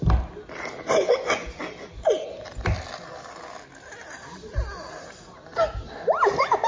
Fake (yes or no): no